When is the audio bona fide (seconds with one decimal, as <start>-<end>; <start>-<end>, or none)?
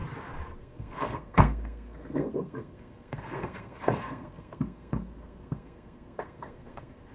0.0-0.6